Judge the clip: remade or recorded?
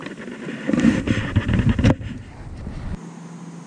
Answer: recorded